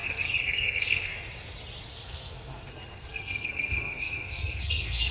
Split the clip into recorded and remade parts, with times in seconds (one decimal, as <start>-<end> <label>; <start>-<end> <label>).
0.0-1.1 remade; 1.1-1.9 recorded; 1.9-5.1 remade